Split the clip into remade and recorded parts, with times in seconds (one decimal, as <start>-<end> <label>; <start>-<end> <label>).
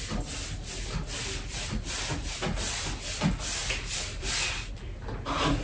0.0-3.6 recorded; 3.6-4.3 remade; 4.3-5.6 recorded